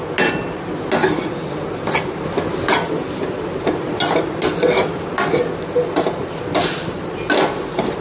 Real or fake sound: real